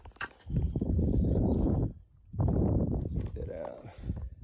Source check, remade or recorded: remade